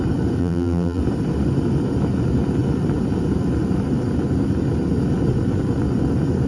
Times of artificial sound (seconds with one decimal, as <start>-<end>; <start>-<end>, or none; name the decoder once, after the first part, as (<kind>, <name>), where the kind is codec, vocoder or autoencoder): 0.4-1.0 (vocoder, BigVGAN v2)